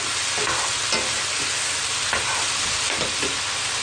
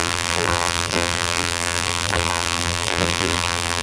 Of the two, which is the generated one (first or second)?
second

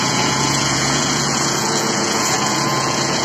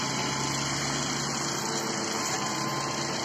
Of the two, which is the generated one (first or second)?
first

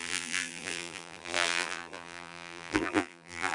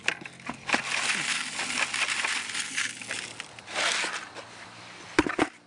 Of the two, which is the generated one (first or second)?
first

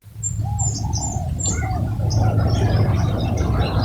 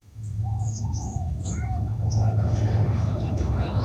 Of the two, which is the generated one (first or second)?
second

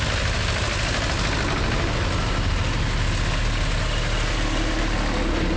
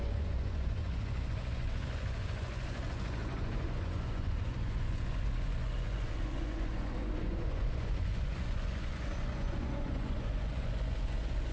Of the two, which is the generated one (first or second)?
second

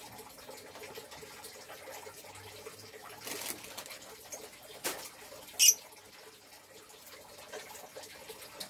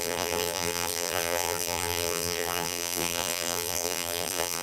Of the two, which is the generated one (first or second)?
second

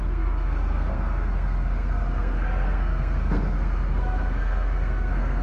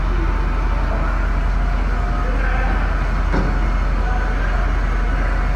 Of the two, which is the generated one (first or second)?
first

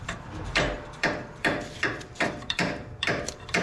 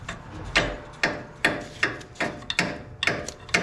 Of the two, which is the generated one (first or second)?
first